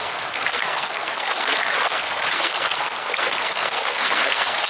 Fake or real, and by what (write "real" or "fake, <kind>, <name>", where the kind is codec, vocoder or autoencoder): fake, codec, SNAC